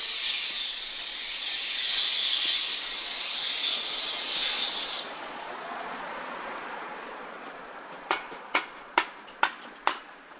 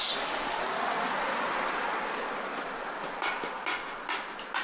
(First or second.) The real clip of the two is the second